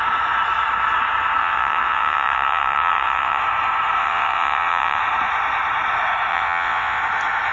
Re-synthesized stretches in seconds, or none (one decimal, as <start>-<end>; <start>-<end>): 1.4-3.4; 4.0-5.0; 6.3-7.0